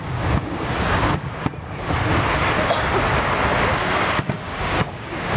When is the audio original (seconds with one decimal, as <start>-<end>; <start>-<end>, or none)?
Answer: 1.4-3.6